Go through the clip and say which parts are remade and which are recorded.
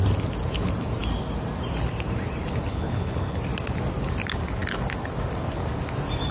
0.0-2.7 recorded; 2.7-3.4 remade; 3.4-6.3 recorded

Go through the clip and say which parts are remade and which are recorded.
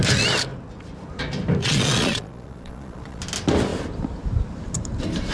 0.0-1.6 recorded; 1.6-3.2 remade; 3.2-5.3 recorded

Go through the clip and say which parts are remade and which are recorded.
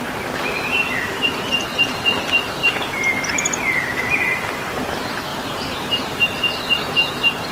0.0-5.3 recorded; 5.3-6.4 remade; 6.4-7.5 recorded